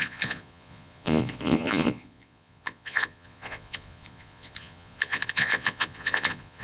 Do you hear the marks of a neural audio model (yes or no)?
yes